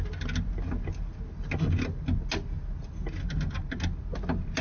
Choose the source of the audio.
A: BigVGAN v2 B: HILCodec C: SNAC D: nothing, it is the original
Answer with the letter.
D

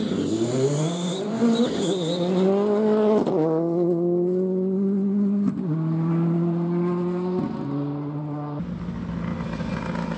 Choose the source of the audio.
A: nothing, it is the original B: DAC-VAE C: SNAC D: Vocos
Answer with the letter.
A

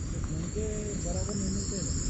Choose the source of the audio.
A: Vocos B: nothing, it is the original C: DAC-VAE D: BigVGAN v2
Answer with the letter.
B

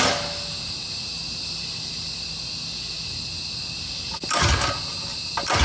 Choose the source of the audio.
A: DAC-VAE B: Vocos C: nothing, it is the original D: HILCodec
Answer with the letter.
C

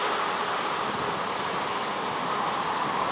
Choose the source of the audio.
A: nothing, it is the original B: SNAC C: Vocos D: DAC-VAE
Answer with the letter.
A